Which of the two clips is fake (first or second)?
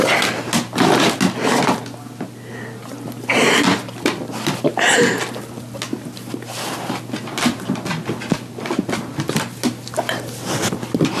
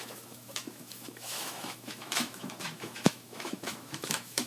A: second